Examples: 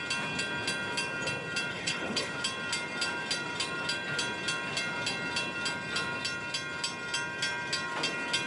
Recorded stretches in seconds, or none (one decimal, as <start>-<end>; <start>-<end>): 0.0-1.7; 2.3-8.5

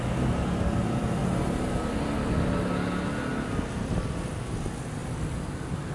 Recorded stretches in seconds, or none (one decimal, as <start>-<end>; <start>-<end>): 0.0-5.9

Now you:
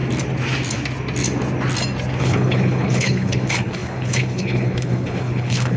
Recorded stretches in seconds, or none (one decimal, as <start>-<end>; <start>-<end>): 0.0-2.2

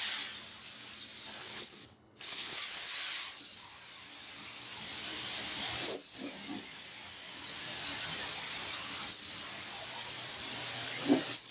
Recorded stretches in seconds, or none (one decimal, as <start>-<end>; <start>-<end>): 0.0-1.4; 2.6-11.5

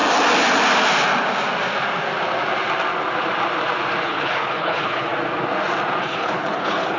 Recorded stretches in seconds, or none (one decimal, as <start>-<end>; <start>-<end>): 0.0-4.0; 5.1-6.0

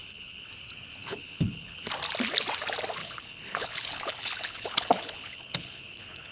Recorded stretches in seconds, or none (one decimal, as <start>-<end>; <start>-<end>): 0.5-1.0; 1.9-3.0

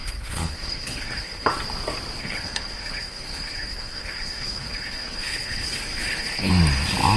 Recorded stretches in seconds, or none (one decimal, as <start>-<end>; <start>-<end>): 1.5-2.2; 6.5-7.2